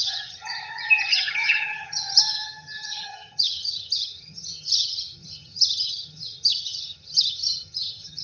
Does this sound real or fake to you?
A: fake